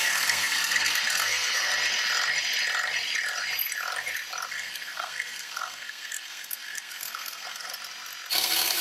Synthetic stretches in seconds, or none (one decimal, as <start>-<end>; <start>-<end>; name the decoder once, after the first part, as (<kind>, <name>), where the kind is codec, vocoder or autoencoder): 0.0-1.7 (codec, SNAC); 4.5-7.7; 8.3-8.8